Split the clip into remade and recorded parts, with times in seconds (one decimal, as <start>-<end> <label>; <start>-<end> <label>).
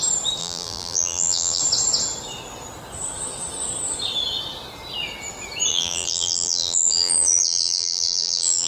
0.0-0.4 recorded; 0.4-1.6 remade; 1.6-5.7 recorded; 5.7-8.7 remade